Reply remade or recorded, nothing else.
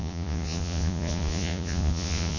remade